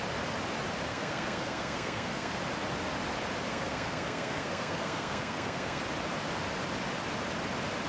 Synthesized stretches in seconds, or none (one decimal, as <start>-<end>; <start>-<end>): 0.9-2.4; 3.5-5.8